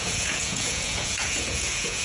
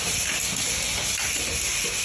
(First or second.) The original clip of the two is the second